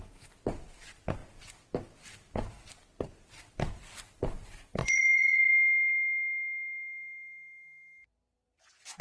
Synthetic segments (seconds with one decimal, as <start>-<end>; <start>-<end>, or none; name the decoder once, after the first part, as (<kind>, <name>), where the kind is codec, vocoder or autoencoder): 4.8-5.5 (vocoder, Vocos)